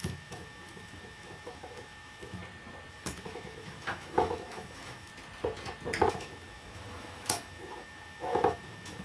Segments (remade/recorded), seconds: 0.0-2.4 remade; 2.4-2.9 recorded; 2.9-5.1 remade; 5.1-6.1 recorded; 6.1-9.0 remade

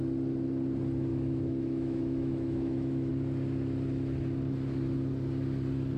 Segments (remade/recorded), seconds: 0.0-1.1 recorded; 1.1-3.1 remade; 3.1-6.0 recorded

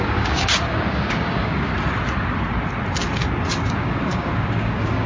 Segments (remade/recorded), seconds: 0.0-1.7 remade; 1.7-3.6 recorded; 3.6-5.1 remade

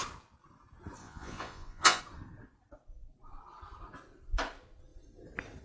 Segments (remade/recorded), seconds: 0.0-1.0 recorded; 1.0-2.0 remade; 2.0-5.6 recorded

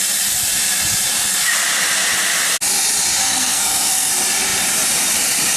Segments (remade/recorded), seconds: 0.0-3.2 recorded; 3.2-4.1 remade; 4.1-5.6 recorded

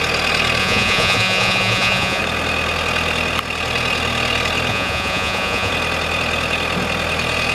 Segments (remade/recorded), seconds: 0.0-0.6 recorded; 0.6-2.2 remade; 2.2-4.7 recorded; 4.7-5.7 remade; 5.7-7.5 recorded